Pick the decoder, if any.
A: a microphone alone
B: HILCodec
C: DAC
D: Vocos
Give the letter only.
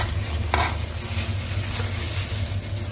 A